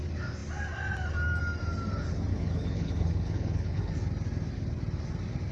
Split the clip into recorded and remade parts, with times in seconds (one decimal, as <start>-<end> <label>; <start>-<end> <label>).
0.0-2.3 recorded; 2.3-3.9 remade; 3.9-5.5 recorded

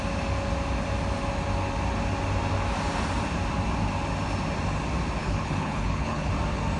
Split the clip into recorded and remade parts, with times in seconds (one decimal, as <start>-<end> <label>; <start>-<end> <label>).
0.0-5.2 recorded; 5.2-6.3 remade; 6.3-6.8 recorded

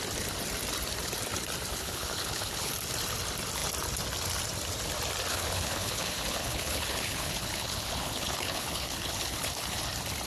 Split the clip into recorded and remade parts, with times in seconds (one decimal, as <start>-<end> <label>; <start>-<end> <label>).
0.0-1.7 recorded; 1.7-2.7 remade; 2.7-5.3 recorded; 5.3-9.8 remade; 9.8-10.3 recorded

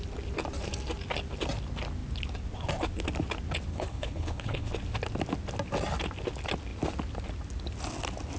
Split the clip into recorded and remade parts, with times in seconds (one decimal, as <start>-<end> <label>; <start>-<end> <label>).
0.0-3.7 recorded; 3.7-4.7 remade; 4.7-8.4 recorded

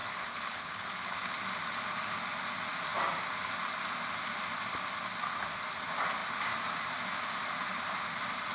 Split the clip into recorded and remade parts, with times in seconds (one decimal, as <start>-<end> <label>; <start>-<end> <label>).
0.0-1.3 remade; 1.3-8.5 recorded

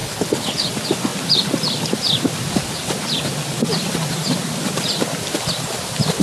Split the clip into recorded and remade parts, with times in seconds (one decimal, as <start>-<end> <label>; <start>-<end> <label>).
0.0-0.7 remade; 0.7-6.2 recorded